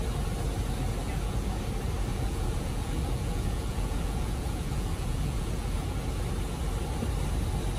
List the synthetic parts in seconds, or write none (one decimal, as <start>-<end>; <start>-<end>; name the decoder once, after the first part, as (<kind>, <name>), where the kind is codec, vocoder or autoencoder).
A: 1.0-1.6 (vocoder, Vocos); 2.1-6.0